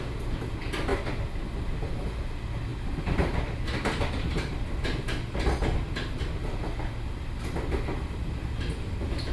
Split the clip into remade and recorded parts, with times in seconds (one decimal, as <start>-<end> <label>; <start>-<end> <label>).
0.0-9.3 recorded